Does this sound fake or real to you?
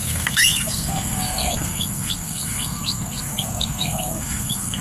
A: fake